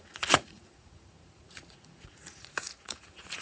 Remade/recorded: remade